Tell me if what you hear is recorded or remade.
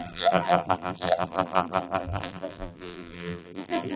remade